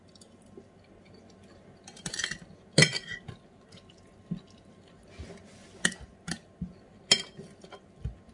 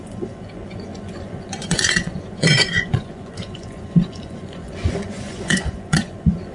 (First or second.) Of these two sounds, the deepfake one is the second